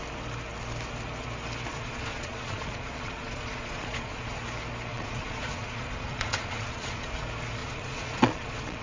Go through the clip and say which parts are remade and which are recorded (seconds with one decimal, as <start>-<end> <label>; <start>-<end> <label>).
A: 0.0-1.7 recorded; 1.7-4.3 remade; 4.3-4.9 recorded; 4.9-7.1 remade; 7.1-7.6 recorded; 7.6-8.8 remade